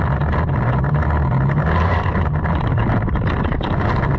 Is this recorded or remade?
remade